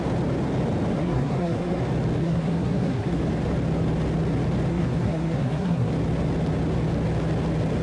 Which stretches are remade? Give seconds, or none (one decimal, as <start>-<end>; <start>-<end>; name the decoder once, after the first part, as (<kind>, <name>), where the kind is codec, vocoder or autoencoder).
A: 0.9-1.8 (codec, SNAC); 2.2-3.2; 4.7-5.9